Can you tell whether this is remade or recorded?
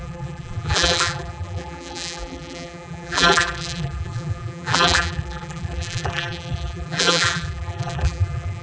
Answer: remade